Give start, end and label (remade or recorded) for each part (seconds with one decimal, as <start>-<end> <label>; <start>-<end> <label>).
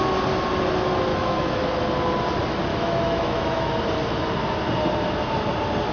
0.0-1.1 recorded; 1.1-1.8 remade; 1.8-2.7 recorded; 2.7-3.7 remade; 3.7-5.9 recorded